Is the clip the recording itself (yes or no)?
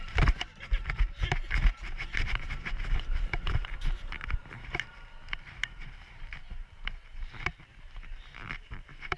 no